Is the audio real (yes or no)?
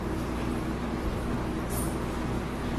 yes